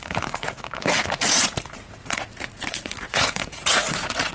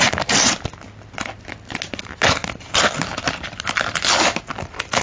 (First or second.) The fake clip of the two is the first